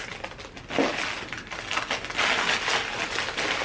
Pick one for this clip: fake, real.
real